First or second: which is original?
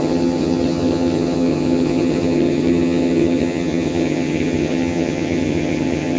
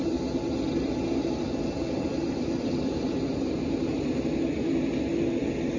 second